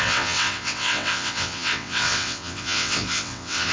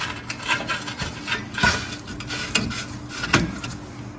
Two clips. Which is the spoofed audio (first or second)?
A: first